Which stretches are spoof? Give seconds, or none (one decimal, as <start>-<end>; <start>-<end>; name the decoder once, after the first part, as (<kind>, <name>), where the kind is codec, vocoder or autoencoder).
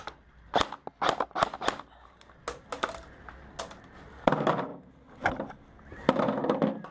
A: none